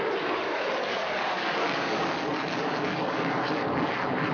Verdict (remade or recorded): remade